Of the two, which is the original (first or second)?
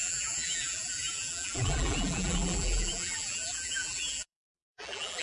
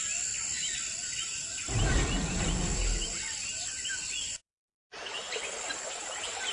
second